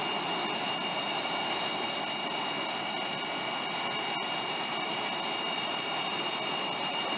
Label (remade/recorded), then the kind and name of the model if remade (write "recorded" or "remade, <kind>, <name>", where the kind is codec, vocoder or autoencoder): recorded